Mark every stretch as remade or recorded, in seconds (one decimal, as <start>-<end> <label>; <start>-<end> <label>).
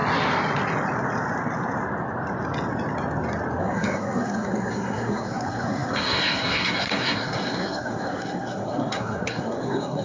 0.0-3.6 recorded; 3.6-10.0 remade